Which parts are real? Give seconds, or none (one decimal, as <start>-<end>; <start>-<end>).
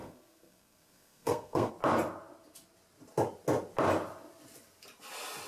1.7-5.5